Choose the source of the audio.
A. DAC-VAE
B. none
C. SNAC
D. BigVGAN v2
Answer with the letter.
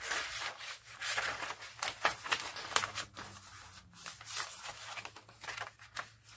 B